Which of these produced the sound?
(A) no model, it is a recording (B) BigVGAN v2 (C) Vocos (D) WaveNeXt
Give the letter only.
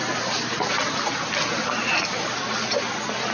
A